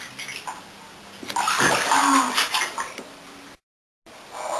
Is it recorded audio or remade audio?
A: recorded